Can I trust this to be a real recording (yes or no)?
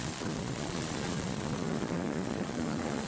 no